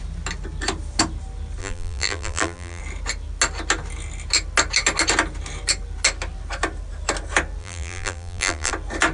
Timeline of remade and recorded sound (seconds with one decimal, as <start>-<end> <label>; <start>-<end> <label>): 0.0-1.6 recorded; 1.6-2.8 remade; 2.8-7.6 recorded; 7.6-8.7 remade; 8.7-9.1 recorded